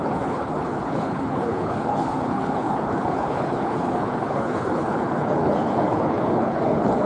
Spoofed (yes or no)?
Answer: yes